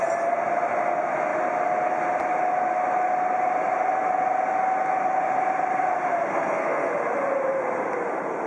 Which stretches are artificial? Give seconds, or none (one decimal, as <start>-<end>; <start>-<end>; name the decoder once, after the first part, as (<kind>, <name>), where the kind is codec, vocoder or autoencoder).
6.3-6.9 (codec, SNAC)